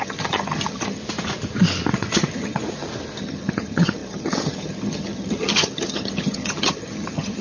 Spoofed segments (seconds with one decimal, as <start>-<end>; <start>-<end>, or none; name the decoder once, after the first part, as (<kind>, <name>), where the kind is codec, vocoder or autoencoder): 0.0-1.0 (vocoder, HiFi-GAN); 1.9-2.6; 3.2-7.4